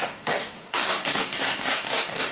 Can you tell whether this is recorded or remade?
remade